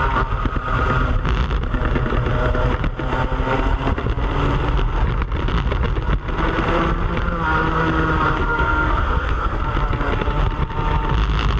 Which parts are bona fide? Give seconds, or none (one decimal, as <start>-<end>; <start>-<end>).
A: 0.0-8.4; 9.6-11.6